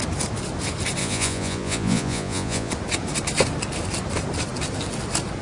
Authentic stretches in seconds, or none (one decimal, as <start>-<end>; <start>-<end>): 0.0-1.0; 2.7-5.4